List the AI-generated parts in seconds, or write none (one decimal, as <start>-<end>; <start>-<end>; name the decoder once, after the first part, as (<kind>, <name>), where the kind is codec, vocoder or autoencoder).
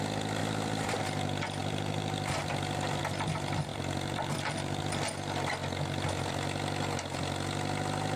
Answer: 0.4-1.0 (vocoder, BigVGAN v2); 1.6-3.0; 3.7-4.8